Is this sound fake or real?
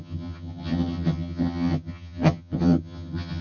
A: fake